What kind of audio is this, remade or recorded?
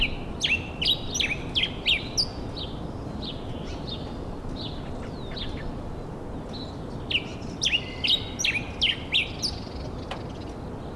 recorded